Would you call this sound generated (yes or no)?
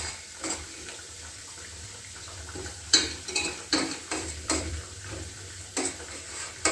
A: yes